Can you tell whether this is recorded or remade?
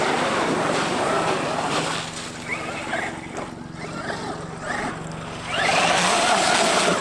recorded